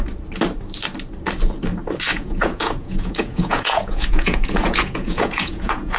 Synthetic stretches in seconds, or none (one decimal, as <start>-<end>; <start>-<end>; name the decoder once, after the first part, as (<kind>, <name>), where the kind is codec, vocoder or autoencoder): 2.1-6.0 (vocoder, Vocos)